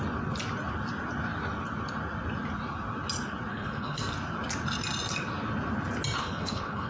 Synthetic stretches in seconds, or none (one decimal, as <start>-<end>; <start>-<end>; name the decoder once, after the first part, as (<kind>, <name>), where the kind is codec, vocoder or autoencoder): 3.5-4.0 (codec, HILCodec); 6.2-6.9